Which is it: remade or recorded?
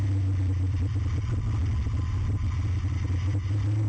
recorded